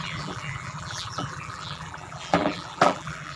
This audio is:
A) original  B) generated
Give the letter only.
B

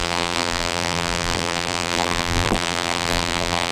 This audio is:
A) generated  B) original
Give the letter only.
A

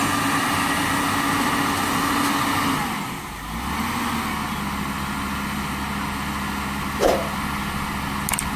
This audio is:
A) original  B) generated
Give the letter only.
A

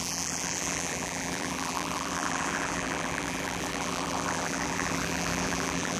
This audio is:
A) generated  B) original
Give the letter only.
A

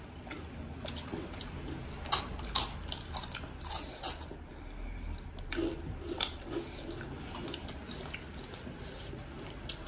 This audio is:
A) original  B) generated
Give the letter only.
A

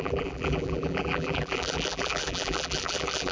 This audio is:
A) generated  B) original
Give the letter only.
A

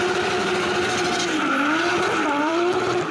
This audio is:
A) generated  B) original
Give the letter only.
A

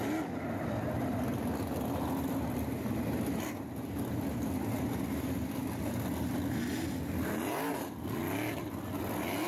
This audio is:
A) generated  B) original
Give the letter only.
B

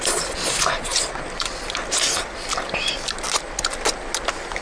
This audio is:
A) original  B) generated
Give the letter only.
A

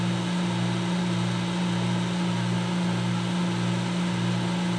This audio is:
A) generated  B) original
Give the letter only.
B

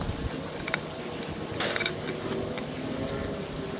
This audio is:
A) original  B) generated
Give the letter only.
A